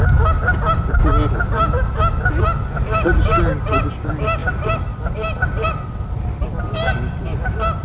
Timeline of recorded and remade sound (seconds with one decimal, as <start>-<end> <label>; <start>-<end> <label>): 0.0-7.8 recorded